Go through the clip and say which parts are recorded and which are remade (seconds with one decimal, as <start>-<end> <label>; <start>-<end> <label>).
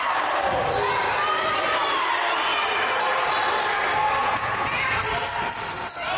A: 0.0-4.2 recorded; 4.2-5.0 remade; 5.0-6.2 recorded